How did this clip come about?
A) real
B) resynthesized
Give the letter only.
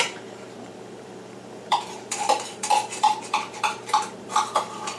B